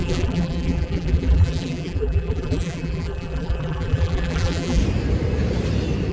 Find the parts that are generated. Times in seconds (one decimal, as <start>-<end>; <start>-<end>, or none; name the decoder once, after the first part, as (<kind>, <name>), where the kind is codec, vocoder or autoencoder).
0.0-4.8 (vocoder, BigVGAN v2)